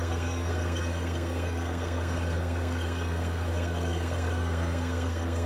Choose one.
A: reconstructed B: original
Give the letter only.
A